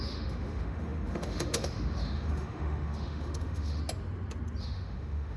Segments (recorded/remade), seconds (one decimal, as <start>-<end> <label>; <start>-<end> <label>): 0.0-3.8 remade; 3.8-4.6 recorded; 4.6-5.4 remade